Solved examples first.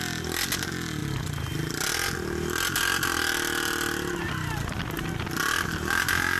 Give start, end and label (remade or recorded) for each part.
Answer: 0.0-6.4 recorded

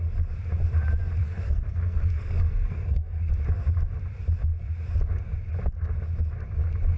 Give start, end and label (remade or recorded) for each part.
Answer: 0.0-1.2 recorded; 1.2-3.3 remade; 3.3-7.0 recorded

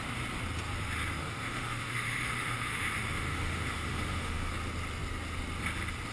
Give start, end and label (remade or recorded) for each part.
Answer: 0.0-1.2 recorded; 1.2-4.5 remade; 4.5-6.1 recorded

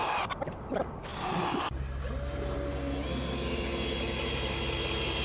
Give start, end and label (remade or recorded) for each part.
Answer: 0.0-5.2 recorded

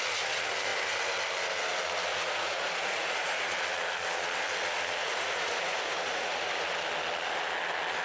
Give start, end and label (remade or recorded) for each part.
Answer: 0.0-2.1 recorded; 2.1-3.5 remade; 3.5-5.0 recorded; 5.0-6.5 remade; 6.5-8.0 recorded

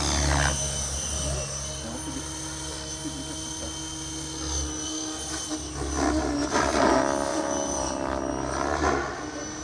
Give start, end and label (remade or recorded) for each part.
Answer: 0.0-7.3 recorded; 7.3-7.9 remade; 7.9-9.6 recorded

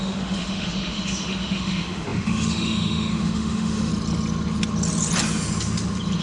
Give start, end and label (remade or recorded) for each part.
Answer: 0.0-3.9 remade; 3.9-6.2 recorded

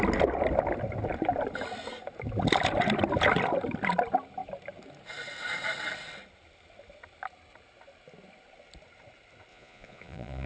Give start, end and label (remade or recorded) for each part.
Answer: 0.0-9.5 recorded; 9.5-10.5 remade